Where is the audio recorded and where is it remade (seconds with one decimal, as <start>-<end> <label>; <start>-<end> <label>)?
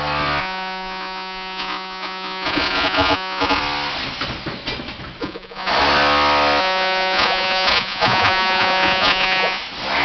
0.0-0.4 recorded; 0.4-3.6 remade; 3.6-5.2 recorded; 5.2-5.7 remade; 5.7-6.6 recorded; 6.6-9.6 remade; 9.6-10.0 recorded